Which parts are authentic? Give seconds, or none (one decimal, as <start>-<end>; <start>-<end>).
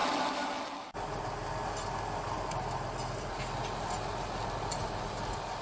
0.0-5.6